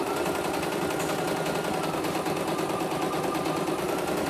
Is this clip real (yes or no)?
yes